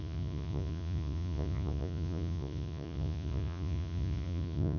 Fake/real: fake